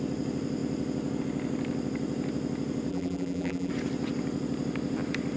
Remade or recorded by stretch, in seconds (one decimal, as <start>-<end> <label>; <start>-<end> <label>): 0.0-2.9 recorded; 2.9-3.7 remade; 3.7-5.4 recorded